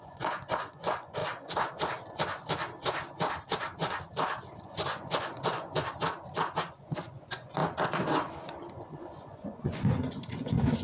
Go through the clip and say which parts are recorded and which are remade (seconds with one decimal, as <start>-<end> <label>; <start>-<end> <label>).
0.0-1.2 remade; 1.2-4.6 recorded; 4.6-5.8 remade; 5.8-6.8 recorded; 6.8-7.6 remade; 7.6-8.7 recorded; 8.7-10.8 remade